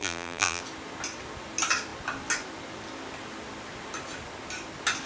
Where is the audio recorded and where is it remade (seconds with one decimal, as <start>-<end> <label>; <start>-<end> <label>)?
0.0-0.6 remade; 0.6-5.1 recorded